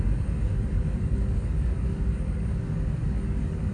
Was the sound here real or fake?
fake